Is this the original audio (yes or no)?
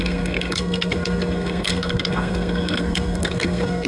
no